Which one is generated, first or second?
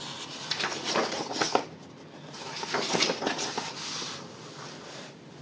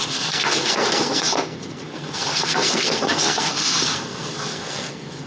second